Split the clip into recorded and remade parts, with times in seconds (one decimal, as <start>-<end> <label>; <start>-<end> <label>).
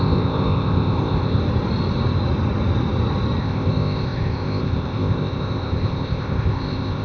0.0-1.4 remade; 1.4-3.4 recorded; 3.4-7.0 remade